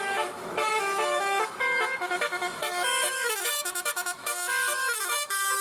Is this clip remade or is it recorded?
remade